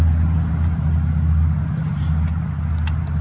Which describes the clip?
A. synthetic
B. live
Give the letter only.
B